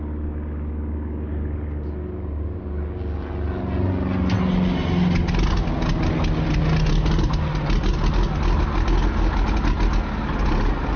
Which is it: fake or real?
real